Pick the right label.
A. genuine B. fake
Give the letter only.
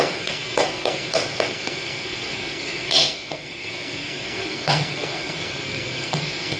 B